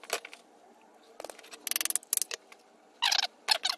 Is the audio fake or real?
real